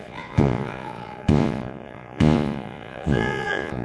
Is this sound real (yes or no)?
no